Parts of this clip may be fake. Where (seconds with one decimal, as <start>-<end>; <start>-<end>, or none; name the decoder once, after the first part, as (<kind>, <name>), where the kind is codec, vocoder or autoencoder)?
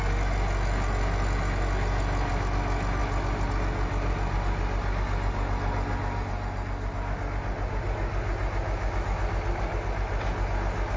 none